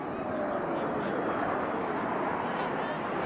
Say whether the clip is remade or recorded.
recorded